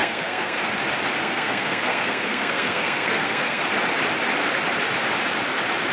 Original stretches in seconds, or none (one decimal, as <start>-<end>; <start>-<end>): 0.7-1.2; 3.6-5.9